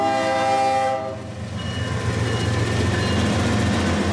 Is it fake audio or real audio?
real